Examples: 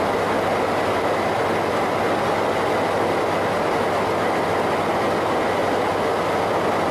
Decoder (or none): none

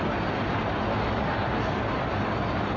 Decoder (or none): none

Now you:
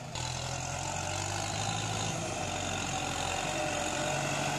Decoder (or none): none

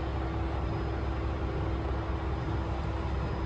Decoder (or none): none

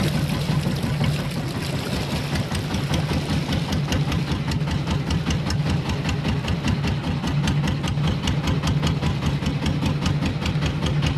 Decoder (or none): none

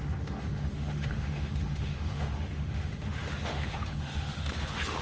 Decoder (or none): autoencoder, DAC-VAE